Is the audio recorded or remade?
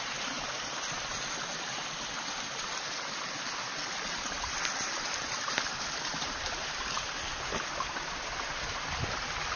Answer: recorded